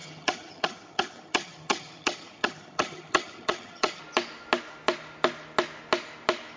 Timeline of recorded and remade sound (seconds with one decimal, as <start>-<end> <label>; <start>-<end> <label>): 0.0-4.0 remade; 4.0-6.6 recorded